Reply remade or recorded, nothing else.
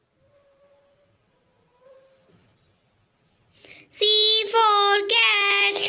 recorded